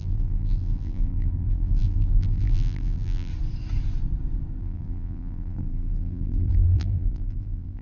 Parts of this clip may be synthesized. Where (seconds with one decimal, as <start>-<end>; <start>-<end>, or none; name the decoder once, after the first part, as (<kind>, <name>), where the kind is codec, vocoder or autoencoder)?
0.0-3.3 (vocoder, BigVGAN v2); 4.6-7.8